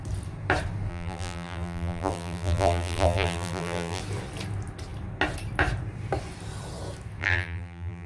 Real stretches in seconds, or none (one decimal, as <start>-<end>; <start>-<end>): 0.0-0.9; 4.0-7.2